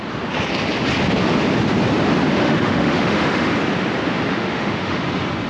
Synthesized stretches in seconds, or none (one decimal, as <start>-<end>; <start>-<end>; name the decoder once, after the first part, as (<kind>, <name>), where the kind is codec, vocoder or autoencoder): 2.4-3.5 (autoencoder, DAC-VAE); 4.3-5.0